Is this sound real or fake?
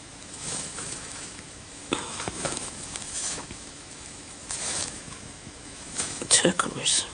fake